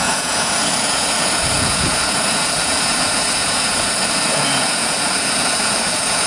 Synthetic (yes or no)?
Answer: yes